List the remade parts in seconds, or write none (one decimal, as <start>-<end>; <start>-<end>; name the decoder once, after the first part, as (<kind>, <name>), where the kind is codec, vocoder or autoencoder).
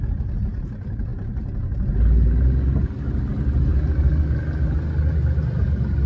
none